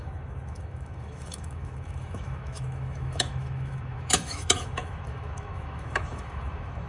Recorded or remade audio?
remade